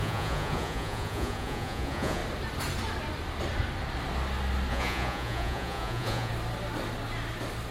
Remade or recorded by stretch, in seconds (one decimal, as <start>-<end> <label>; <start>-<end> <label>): 0.0-2.2 remade; 2.2-4.7 recorded; 4.7-6.3 remade; 6.3-7.7 recorded